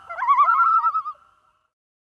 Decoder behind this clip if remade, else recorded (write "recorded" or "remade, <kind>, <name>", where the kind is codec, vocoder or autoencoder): remade, vocoder, BigVGAN v2